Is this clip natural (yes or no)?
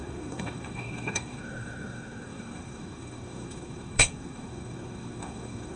no